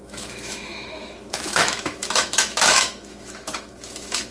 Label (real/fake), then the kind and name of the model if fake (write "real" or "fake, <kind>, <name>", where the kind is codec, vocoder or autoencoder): fake, autoencoder, DAC-VAE